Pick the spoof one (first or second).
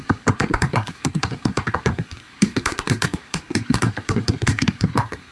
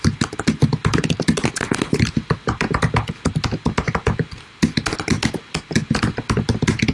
first